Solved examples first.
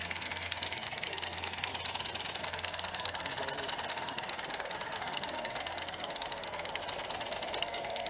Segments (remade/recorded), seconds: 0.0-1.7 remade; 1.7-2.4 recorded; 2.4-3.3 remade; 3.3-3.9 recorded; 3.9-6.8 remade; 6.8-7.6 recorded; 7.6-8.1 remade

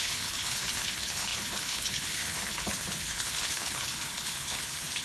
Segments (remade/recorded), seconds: 0.0-5.0 remade

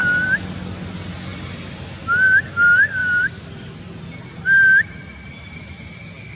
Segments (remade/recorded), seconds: 0.0-3.0 recorded; 3.0-4.0 remade; 4.0-6.4 recorded

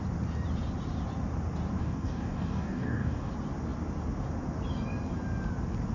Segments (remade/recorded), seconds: 0.0-1.8 recorded; 1.8-3.3 remade; 3.3-5.9 recorded